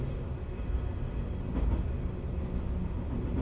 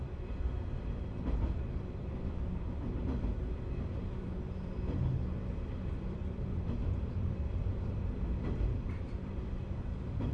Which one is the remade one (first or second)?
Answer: second